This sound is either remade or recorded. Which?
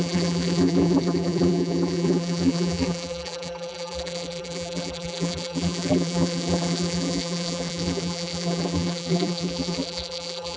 remade